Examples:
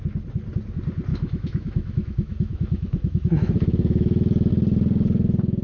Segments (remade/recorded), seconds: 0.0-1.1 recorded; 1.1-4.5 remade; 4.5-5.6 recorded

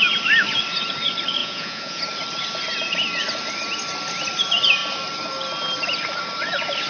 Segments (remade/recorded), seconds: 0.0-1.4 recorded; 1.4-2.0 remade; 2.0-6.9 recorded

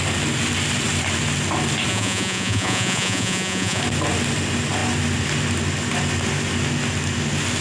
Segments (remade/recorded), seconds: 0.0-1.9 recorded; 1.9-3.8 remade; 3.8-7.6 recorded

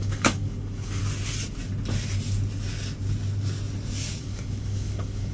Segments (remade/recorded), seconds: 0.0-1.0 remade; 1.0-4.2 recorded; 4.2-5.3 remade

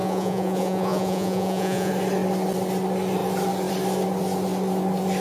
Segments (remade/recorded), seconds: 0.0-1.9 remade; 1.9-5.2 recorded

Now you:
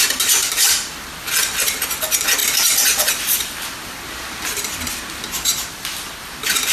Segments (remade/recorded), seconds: 0.0-6.7 recorded

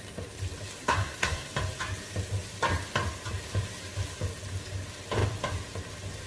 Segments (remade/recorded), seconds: 0.0-0.8 recorded; 0.8-1.5 remade; 1.5-6.3 recorded